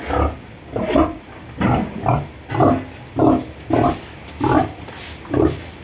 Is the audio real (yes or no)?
yes